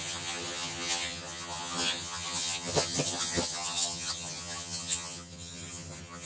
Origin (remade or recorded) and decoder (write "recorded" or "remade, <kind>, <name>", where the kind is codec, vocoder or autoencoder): remade, vocoder, HiFi-GAN